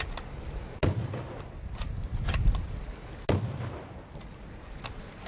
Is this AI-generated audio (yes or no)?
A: no